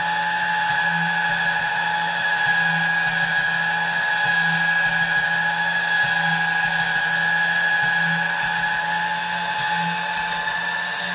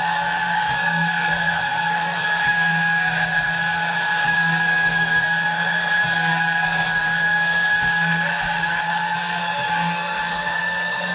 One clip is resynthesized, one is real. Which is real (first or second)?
first